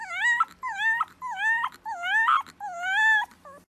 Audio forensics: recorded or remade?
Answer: recorded